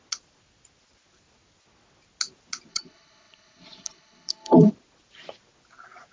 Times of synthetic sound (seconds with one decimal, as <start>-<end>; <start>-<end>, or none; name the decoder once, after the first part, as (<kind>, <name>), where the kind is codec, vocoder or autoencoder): 2.7-4.7 (codec, HILCodec)